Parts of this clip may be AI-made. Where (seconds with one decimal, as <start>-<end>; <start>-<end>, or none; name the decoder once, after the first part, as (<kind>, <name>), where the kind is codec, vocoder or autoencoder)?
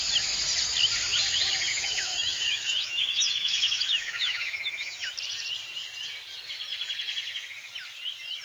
1.7-5.1 (autoencoder, DAC-VAE)